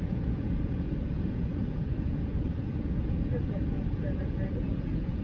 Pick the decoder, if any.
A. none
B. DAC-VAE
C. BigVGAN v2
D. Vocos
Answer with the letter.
D